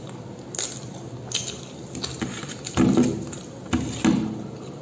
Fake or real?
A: real